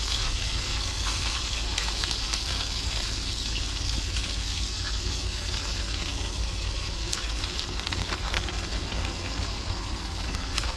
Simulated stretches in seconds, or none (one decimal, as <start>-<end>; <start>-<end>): 0.0-10.8

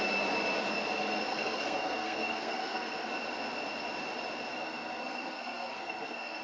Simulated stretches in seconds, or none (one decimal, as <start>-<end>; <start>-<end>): 1.3-3.1; 4.5-6.4